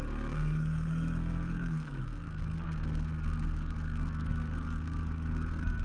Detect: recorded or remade remade